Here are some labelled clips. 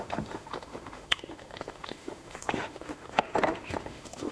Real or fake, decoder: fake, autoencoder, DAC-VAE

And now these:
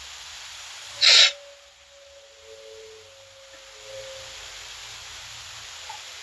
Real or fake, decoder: real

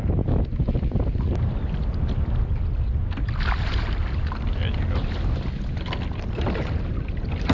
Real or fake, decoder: real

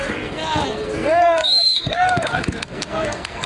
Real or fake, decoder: fake, codec, SNAC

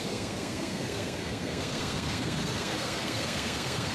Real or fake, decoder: fake, codec, SNAC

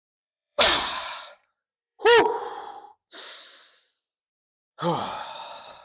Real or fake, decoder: fake, vocoder, BigVGAN v2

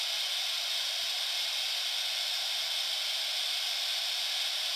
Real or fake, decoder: real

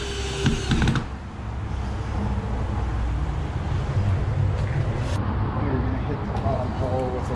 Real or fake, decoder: real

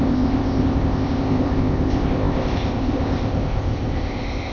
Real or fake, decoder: fake, codec, ZipCodec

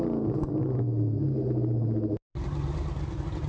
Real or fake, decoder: real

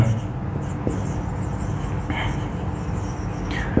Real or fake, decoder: real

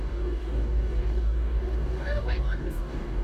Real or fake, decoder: fake, codec, DAC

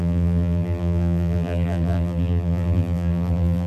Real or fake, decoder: fake, vocoder, BigVGAN v2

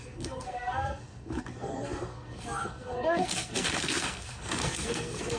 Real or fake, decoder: fake, codec, SNAC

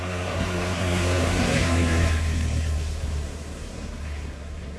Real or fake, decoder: fake, codec, SNAC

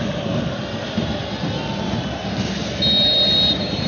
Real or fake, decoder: real